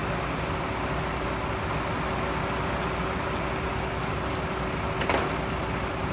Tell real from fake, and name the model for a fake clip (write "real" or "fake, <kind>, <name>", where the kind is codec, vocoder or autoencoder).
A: real